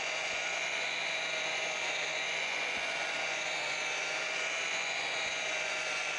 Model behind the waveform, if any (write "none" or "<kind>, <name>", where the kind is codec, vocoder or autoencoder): vocoder, Vocos